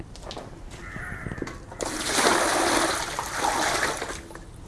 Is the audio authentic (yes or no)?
yes